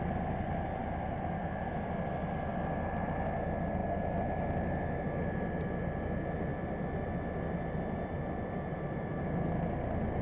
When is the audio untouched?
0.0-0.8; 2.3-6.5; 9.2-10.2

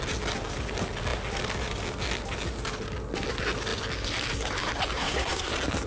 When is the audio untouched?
0.0-5.0; 5.5-5.9

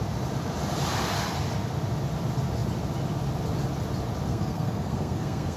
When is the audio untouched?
0.0-4.3

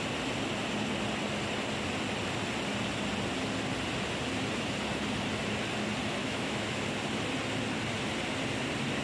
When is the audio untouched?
0.0-6.2; 6.8-9.0

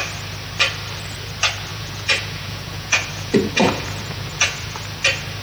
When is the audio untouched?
0.0-1.7; 4.8-5.4